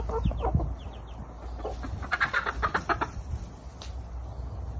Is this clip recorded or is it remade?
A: recorded